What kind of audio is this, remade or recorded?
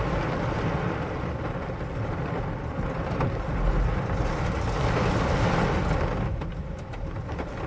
recorded